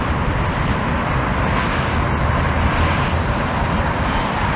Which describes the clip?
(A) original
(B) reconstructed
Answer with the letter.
A